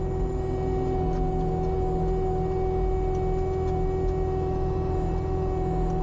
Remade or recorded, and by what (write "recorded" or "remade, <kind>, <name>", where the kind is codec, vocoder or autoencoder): recorded